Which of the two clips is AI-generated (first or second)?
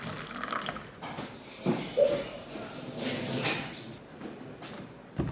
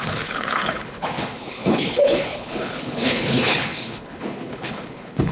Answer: second